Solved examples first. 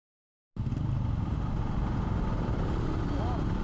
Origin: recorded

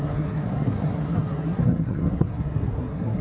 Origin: remade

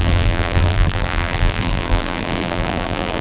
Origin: remade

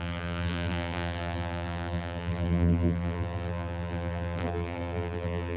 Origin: remade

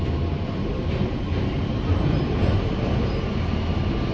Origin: remade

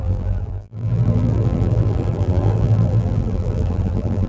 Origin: remade